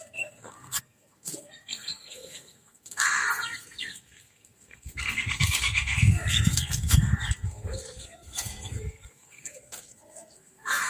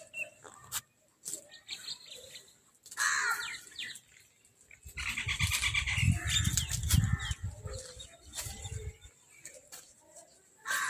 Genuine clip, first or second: second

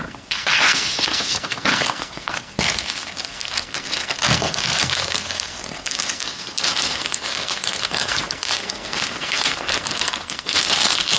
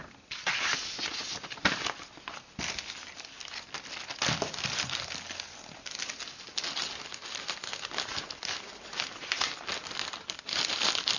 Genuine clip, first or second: second